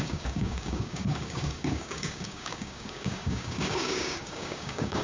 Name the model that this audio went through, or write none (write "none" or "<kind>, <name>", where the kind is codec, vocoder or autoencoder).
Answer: codec, DAC